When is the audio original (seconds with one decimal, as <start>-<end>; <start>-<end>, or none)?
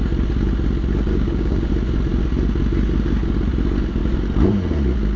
0.0-1.1; 1.7-5.2